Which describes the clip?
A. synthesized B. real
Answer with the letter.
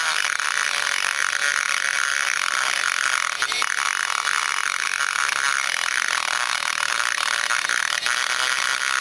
B